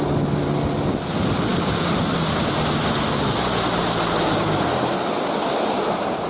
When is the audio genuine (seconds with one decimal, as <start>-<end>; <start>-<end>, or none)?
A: 0.0-6.3